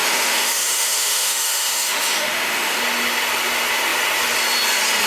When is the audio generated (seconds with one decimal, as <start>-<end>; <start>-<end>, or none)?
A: 0.0-2.8